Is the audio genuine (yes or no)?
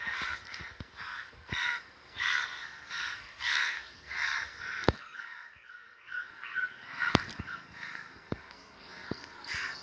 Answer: no